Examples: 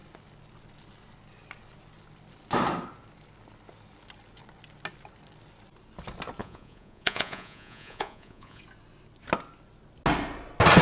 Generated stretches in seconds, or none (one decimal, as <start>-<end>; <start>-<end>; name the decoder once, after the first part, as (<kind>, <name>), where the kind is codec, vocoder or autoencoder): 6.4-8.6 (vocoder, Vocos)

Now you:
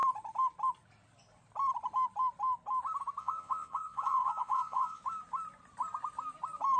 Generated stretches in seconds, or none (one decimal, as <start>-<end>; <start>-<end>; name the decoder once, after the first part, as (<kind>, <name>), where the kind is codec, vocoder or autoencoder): 3.2-5.0 (vocoder, Vocos)

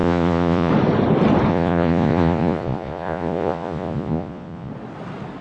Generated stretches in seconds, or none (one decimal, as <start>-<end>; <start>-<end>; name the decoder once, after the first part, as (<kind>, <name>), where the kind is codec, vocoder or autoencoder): 0.0-0.7 (vocoder, Vocos); 1.5-4.7

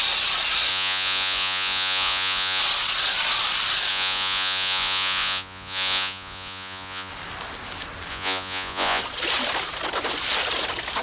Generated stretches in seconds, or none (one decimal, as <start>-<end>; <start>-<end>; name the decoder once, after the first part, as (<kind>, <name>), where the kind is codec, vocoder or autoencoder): 0.7-2.6 (vocoder, Vocos); 3.9-7.1; 8.1-9.0

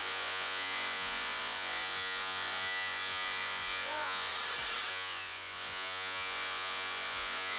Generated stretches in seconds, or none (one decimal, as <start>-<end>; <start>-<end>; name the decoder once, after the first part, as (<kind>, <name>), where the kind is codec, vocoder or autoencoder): 0.0-4.3 (vocoder, Vocos); 4.9-7.6